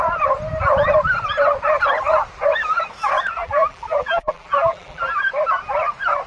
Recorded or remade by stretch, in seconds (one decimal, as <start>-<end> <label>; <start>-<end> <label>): 0.0-3.4 recorded; 3.4-5.2 remade; 5.2-6.3 recorded